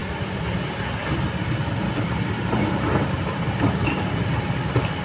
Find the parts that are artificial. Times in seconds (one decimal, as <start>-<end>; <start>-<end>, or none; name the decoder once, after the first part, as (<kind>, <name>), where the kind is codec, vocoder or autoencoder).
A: 1.8-5.0 (vocoder, BigVGAN v2)

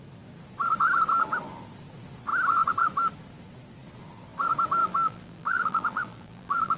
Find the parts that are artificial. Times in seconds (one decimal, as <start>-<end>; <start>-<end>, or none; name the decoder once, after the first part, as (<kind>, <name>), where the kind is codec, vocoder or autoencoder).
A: 4.8-6.8 (vocoder, BigVGAN v2)